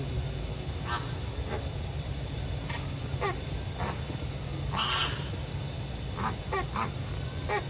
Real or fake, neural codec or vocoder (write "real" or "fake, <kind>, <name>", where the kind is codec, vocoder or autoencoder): real